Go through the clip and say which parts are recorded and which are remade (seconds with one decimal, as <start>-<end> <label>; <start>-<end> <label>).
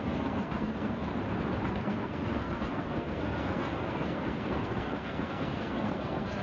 0.0-1.1 remade; 1.1-1.7 recorded; 1.7-6.4 remade